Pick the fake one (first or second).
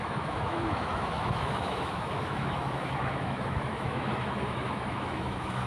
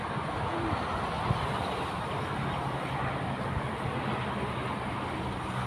first